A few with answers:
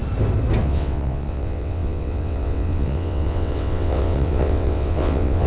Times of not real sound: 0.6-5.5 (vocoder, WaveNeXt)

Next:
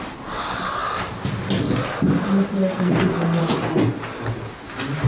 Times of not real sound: 2.6-3.4 (codec, SNAC)

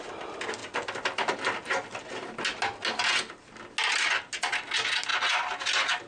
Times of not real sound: none